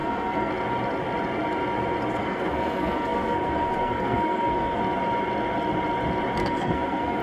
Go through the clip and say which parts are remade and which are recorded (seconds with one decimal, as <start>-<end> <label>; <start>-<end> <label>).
0.0-0.5 remade; 0.5-2.2 recorded; 2.2-4.8 remade; 4.8-6.4 recorded; 6.4-7.2 remade